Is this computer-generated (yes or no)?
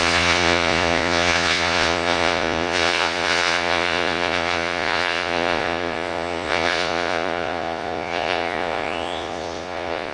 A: yes